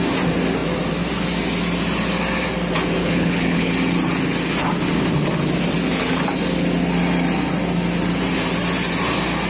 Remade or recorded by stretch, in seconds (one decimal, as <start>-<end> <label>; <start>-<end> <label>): 0.0-3.0 recorded; 3.0-3.7 remade; 3.7-9.5 recorded